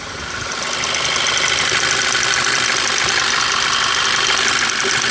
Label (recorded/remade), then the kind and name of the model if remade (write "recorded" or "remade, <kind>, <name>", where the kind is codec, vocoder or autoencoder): recorded